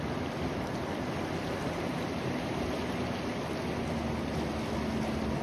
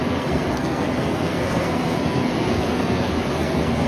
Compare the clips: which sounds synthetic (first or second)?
second